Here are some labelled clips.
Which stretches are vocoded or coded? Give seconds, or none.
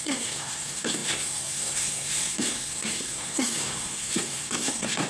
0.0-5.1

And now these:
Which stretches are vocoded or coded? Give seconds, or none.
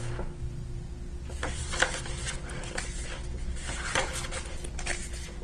none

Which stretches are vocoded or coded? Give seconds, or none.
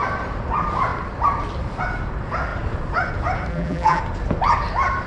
3.5-4.0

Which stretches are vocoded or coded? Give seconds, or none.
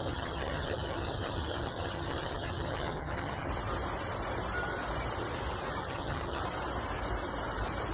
0.0-3.5; 5.8-6.4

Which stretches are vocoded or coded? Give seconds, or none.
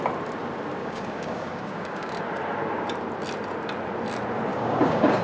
0.8-2.1; 4.5-5.2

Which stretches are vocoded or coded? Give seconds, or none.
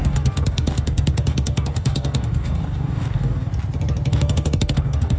0.0-3.5; 4.1-5.2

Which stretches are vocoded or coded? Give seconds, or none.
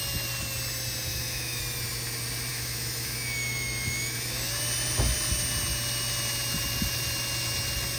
1.1-1.6; 2.5-4.5